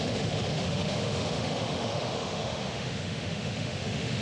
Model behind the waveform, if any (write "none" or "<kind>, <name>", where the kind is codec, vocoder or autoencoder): autoencoder, DAC-VAE